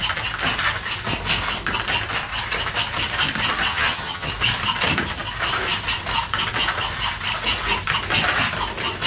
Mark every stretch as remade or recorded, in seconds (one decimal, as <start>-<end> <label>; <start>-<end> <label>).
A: 0.0-3.7 recorded; 3.7-4.3 remade; 4.3-9.1 recorded